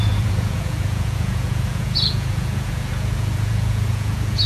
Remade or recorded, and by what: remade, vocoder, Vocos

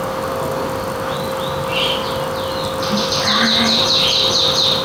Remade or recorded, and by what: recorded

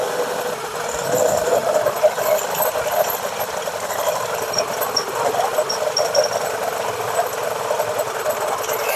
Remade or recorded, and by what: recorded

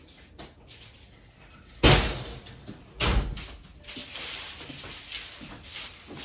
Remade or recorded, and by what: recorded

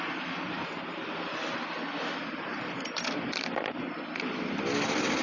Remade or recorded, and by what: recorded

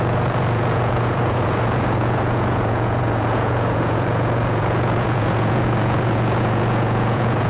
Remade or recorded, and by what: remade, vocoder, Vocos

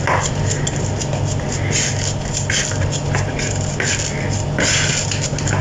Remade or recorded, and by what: recorded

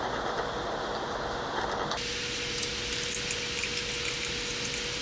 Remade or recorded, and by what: recorded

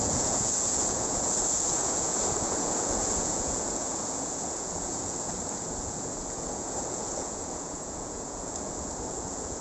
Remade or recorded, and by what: remade, vocoder, Vocos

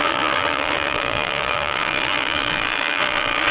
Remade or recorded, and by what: remade, vocoder, Vocos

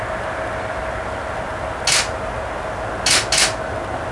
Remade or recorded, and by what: recorded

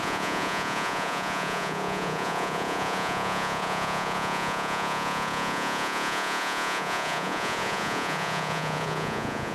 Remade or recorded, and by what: remade, vocoder, Vocos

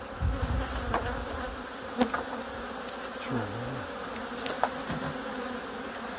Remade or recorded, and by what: recorded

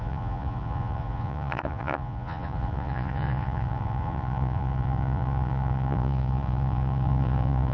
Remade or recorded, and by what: remade, vocoder, Vocos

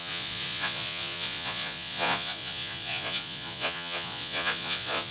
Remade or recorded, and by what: remade, vocoder, Vocos